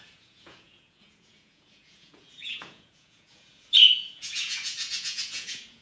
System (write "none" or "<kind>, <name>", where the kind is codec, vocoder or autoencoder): vocoder, Vocos